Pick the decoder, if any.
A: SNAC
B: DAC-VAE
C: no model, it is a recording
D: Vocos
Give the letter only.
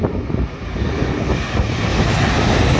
C